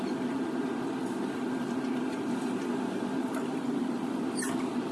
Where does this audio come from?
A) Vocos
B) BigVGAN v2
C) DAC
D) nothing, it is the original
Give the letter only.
D